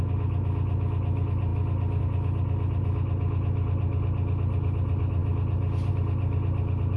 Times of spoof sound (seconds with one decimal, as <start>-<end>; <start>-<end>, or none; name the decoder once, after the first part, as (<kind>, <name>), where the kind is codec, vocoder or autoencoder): none